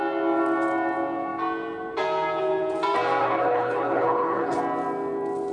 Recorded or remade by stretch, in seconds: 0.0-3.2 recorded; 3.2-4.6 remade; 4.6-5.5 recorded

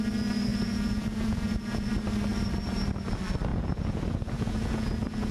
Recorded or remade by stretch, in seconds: 0.0-0.5 recorded; 0.5-1.9 remade; 1.9-3.5 recorded; 3.5-5.3 remade

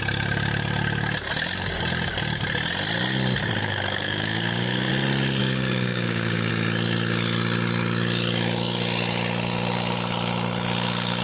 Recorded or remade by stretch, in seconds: 0.0-3.6 recorded; 3.6-4.9 remade; 4.9-5.4 recorded; 5.4-6.5 remade; 6.5-11.2 recorded

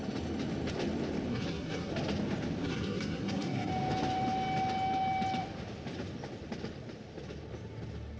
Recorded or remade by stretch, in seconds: 0.0-1.3 recorded; 1.3-1.9 remade; 1.9-2.6 recorded; 2.6-3.7 remade; 3.7-8.2 recorded

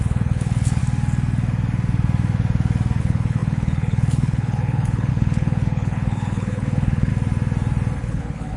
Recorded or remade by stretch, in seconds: 0.0-0.8 remade; 0.8-3.0 recorded; 3.0-7.1 remade; 7.1-8.0 recorded; 8.0-8.6 remade

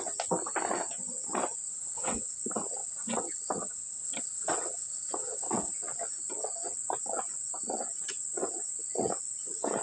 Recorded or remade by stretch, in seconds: 0.0-1.7 recorded; 1.7-2.4 remade; 2.4-2.8 recorded; 2.8-5.7 remade; 5.7-9.8 recorded

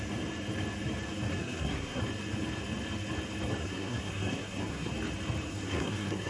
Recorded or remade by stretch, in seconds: 0.0-1.4 recorded; 1.4-2.0 remade; 2.0-3.6 recorded; 3.6-4.9 remade; 4.9-5.5 recorded; 5.5-6.3 remade